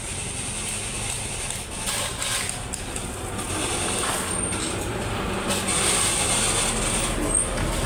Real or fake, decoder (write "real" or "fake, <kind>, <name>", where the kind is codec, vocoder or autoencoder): real